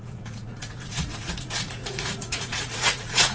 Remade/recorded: remade